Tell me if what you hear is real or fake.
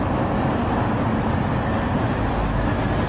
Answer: real